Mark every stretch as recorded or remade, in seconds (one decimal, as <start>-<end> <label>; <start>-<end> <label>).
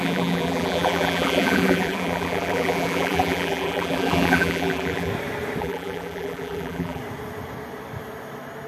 0.0-5.1 remade; 5.1-5.6 recorded; 5.6-7.0 remade; 7.0-8.7 recorded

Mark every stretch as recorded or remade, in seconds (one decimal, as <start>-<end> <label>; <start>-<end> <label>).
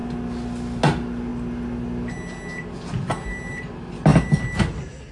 0.0-5.1 recorded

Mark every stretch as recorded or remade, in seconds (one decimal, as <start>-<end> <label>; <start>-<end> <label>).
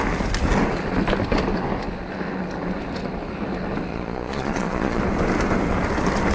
0.0-3.9 recorded; 3.9-5.0 remade; 5.0-6.3 recorded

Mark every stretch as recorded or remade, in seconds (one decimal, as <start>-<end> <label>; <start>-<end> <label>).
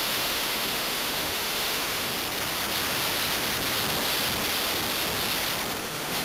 0.0-2.1 remade; 2.1-5.8 recorded; 5.8-6.2 remade